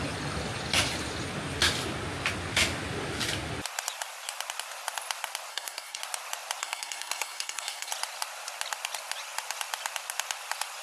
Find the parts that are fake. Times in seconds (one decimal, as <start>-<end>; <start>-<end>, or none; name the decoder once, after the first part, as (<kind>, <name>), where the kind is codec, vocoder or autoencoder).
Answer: 5.5-6.0 (codec, SNAC); 6.6-7.9